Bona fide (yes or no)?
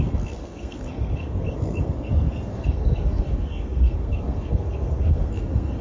no